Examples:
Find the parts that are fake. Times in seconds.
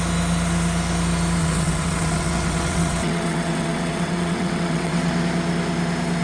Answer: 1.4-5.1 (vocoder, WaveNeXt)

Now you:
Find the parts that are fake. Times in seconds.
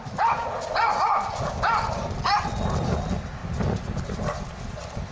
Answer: none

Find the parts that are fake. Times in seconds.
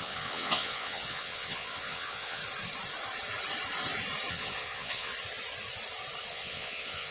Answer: 0.0-2.4 (vocoder, WaveNeXt); 4.3-5.1; 6.3-7.1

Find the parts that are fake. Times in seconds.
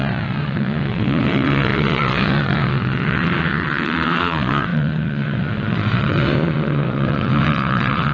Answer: 0.0-8.1 (vocoder, WaveNeXt)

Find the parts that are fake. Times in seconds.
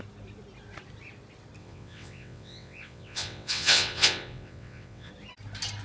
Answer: 1.6-5.1 (vocoder, WaveNeXt)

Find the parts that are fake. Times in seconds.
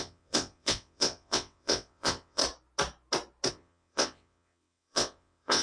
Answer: 0.0-2.4 (vocoder, WaveNeXt); 3.5-5.6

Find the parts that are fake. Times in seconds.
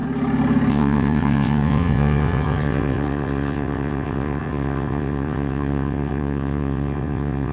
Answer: 0.7-7.5 (vocoder, WaveNeXt)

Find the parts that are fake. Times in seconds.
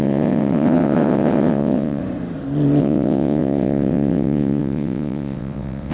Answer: 0.0-2.0 (vocoder, WaveNeXt); 2.8-5.9